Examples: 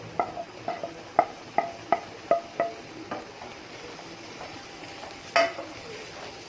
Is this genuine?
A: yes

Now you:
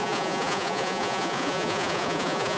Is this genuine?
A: no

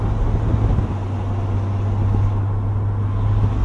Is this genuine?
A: yes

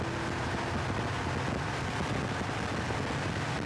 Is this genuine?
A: yes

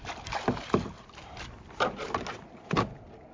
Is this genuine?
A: yes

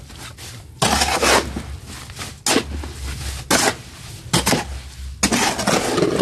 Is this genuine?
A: yes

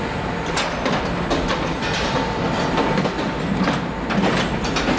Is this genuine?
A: yes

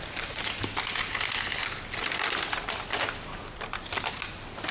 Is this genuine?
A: yes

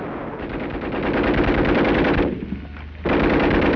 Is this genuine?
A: yes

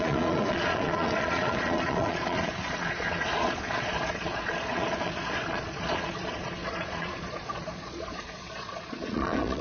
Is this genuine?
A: no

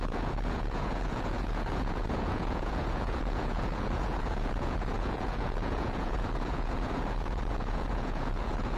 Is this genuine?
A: no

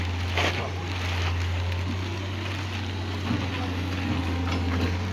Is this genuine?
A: yes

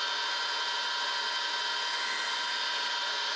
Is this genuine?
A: yes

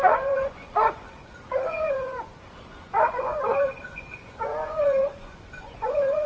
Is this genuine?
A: no